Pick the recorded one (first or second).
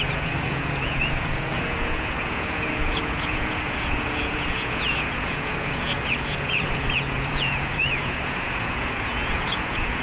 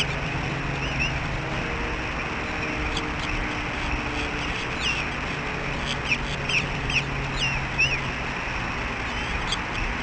second